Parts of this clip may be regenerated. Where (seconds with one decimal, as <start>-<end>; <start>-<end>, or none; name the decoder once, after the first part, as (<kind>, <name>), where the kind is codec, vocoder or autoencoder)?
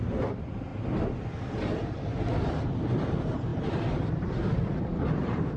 none